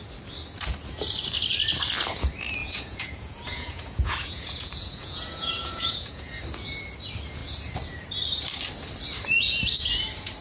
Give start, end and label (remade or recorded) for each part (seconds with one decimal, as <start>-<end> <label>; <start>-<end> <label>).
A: 0.0-2.6 recorded; 2.6-6.4 remade; 6.4-10.4 recorded